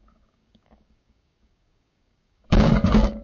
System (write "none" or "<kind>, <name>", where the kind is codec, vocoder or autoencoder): codec, DAC